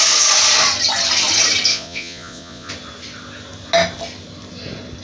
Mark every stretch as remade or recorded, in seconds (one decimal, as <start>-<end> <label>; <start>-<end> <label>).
0.0-1.7 recorded; 1.7-2.7 remade; 2.7-5.0 recorded